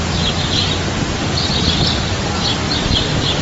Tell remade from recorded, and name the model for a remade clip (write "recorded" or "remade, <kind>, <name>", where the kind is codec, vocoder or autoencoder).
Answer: remade, vocoder, BigVGAN v2